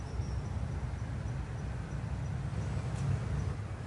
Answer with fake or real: real